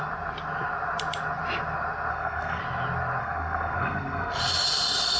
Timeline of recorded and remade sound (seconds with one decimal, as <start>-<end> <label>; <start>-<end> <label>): 0.0-2.1 recorded; 2.1-2.6 remade; 2.6-3.2 recorded; 3.2-4.4 remade; 4.4-5.2 recorded